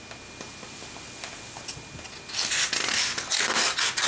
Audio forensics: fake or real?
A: real